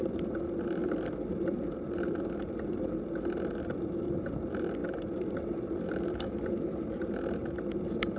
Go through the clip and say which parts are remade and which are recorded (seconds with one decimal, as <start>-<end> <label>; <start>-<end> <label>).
0.0-8.2 recorded